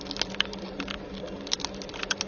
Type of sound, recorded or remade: recorded